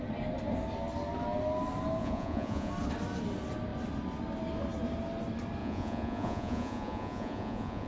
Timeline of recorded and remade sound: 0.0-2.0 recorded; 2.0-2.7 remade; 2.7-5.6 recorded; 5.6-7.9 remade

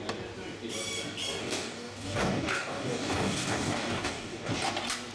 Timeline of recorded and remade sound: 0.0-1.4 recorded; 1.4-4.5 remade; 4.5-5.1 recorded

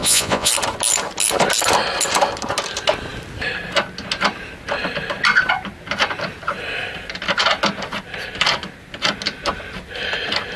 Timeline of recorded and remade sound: 0.0-0.5 remade; 0.5-10.6 recorded